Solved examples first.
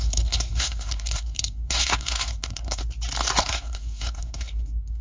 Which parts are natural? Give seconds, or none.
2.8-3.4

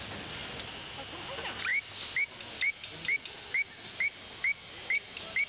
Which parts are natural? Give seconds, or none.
0.0-5.5

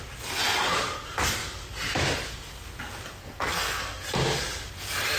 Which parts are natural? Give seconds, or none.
0.0-3.2; 4.0-5.2

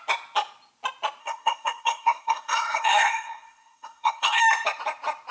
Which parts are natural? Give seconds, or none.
0.0-1.2; 4.4-5.3

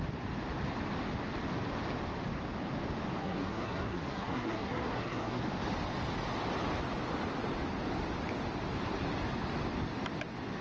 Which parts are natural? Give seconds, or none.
0.0-3.2; 5.4-10.6

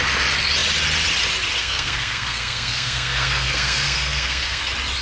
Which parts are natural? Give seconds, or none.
0.0-1.6; 4.6-5.0